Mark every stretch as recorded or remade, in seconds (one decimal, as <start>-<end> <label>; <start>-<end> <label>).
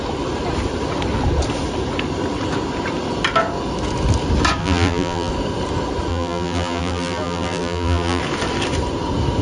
0.0-4.6 recorded; 4.6-5.3 remade; 5.3-6.1 recorded; 6.1-8.2 remade; 8.2-9.4 recorded